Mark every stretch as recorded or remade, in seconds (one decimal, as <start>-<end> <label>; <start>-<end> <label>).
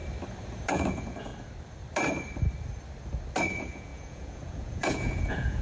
0.0-0.7 recorded; 0.7-1.3 remade; 1.3-3.4 recorded; 3.4-5.6 remade